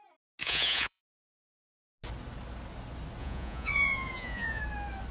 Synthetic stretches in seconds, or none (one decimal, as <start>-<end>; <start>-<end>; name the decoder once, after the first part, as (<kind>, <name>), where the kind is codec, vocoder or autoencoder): 0.4-1.0 (vocoder, Vocos); 3.2-4.6